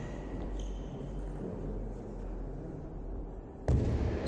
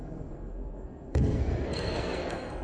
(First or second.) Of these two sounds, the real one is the first